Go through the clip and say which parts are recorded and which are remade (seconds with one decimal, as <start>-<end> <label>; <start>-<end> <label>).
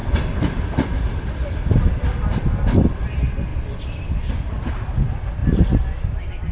0.0-1.9 remade; 1.9-3.5 recorded; 3.5-4.7 remade; 4.7-6.5 recorded